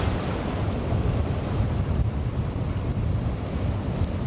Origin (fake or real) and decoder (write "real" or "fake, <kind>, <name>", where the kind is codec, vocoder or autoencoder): real